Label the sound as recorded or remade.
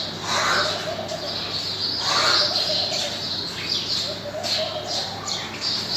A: recorded